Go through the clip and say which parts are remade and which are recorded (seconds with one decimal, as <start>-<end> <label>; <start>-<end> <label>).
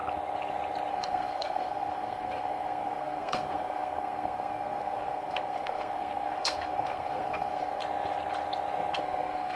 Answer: 0.0-0.9 recorded; 0.9-7.8 remade; 7.8-8.9 recorded; 8.9-9.6 remade